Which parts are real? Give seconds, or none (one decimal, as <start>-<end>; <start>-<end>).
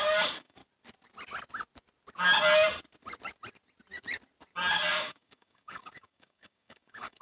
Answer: 0.6-4.9